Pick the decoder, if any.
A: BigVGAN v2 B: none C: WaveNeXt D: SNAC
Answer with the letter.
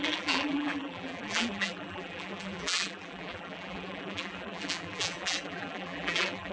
A